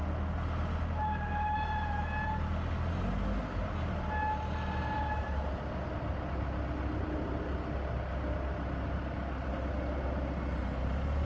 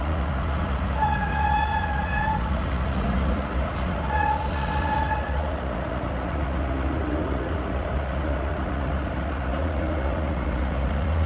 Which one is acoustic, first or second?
first